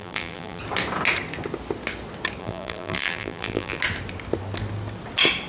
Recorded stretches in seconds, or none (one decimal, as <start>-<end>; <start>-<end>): 0.6-2.4; 3.8-5.5